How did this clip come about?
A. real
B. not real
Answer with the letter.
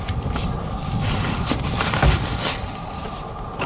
A